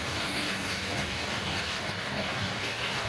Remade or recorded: remade